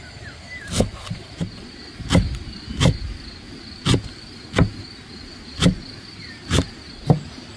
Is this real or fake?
real